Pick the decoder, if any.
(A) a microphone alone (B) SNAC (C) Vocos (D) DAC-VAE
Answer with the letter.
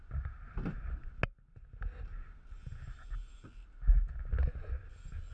A